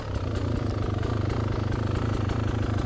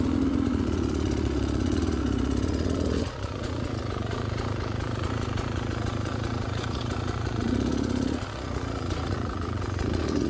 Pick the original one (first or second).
first